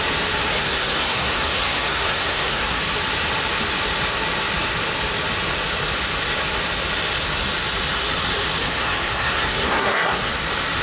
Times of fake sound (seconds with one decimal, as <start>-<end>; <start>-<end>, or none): 0.5-2.8; 8.6-10.3